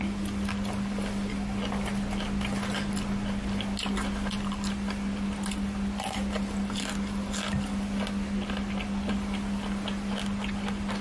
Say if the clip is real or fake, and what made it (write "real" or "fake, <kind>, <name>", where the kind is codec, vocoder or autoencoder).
real